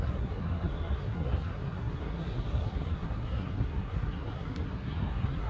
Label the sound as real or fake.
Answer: fake